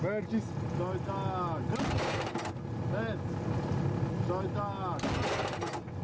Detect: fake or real real